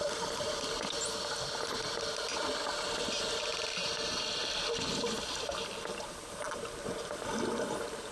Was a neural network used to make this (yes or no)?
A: no